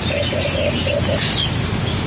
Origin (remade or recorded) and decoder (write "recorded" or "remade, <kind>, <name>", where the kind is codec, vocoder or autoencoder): recorded